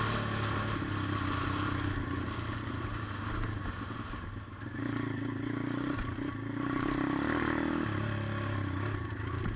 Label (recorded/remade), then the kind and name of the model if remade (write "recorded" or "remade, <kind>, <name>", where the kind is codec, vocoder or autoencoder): recorded